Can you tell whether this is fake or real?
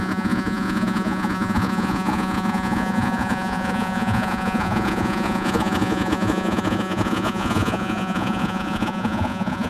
fake